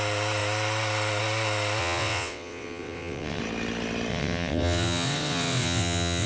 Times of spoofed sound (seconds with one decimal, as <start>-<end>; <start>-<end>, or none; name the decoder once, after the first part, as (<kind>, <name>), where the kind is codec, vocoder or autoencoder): 1.8-3.4 (vocoder, WaveNeXt); 4.1-6.3